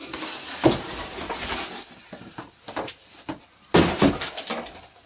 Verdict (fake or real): real